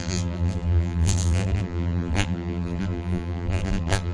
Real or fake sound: fake